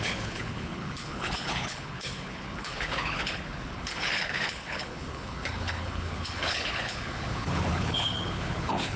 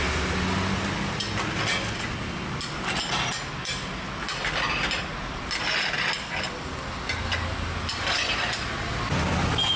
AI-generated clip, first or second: first